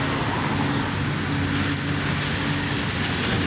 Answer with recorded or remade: recorded